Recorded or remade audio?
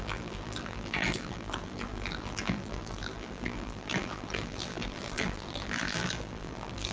remade